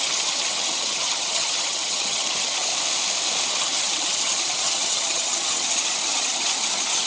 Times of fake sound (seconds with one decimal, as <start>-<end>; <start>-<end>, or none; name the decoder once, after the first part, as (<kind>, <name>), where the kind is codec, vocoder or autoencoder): 0.0-2.7 (vocoder, HiFi-GAN); 3.5-7.1

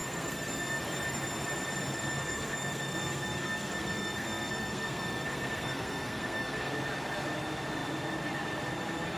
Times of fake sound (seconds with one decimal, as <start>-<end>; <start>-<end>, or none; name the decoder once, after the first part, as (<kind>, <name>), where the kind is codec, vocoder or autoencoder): 0.0-0.8 (codec, SNAC); 2.2-6.7

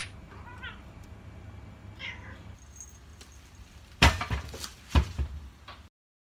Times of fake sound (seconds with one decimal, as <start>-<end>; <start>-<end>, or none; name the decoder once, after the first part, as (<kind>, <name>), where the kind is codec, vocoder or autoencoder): 0.0-1.4 (vocoder, BigVGAN v2); 3.1-5.3

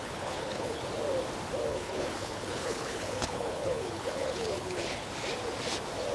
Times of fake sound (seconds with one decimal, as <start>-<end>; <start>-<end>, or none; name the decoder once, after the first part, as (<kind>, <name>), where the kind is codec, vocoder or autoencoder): 0.0-0.8 (codec, HILCodec); 1.7-5.1

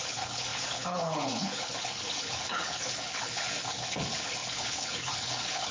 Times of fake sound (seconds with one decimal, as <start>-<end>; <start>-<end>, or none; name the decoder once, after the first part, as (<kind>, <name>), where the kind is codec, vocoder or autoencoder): 0.0-5.7 (codec, HILCodec)

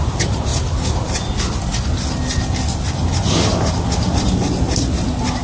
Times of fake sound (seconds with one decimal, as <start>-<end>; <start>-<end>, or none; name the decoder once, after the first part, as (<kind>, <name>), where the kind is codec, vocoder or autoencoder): none

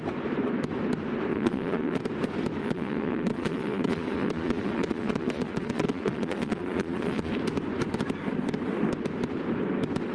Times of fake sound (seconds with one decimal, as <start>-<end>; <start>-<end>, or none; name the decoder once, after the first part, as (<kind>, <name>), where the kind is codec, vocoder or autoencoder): 1.3-2.0 (vocoder, Vocos); 2.6-7.3